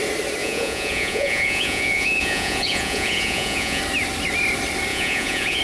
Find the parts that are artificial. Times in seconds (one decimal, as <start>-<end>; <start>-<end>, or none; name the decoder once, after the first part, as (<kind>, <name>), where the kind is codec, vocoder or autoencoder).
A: 0.4-3.8 (vocoder, Vocos); 4.9-5.6